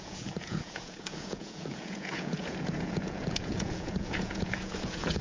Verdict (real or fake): fake